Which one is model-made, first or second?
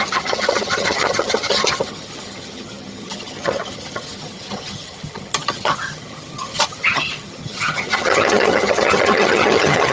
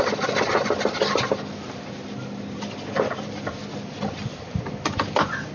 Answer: first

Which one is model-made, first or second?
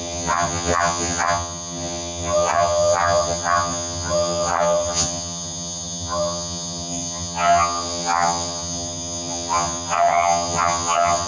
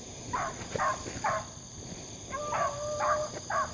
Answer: first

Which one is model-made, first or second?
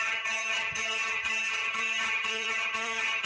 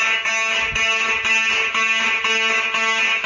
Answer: first